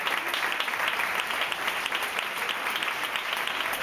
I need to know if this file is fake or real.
real